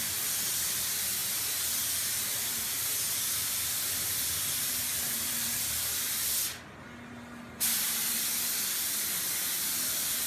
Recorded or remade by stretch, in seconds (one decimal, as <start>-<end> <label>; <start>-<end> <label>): 0.0-10.3 recorded